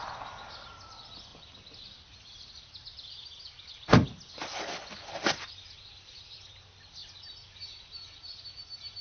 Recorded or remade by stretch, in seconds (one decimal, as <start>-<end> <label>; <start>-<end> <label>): 0.0-9.0 recorded